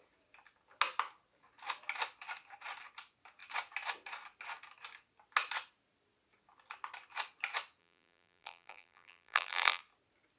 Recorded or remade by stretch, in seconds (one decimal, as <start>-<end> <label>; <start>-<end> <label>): 0.0-7.8 recorded; 7.8-9.8 remade; 9.8-10.4 recorded